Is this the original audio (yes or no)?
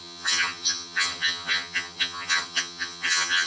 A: no